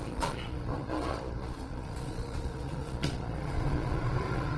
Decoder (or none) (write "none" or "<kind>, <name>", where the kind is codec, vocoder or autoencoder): vocoder, Vocos